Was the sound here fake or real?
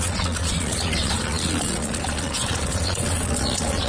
fake